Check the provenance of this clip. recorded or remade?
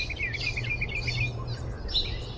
recorded